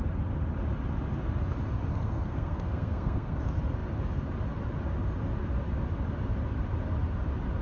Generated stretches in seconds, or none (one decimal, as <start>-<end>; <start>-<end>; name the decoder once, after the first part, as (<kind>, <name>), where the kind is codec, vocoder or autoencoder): 1.9-3.4 (codec, SNAC)